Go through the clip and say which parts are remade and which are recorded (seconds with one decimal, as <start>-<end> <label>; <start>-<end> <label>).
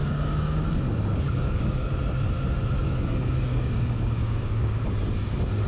0.0-0.7 remade; 0.7-1.1 recorded; 1.1-1.9 remade; 1.9-2.8 recorded; 2.8-4.8 remade; 4.8-5.7 recorded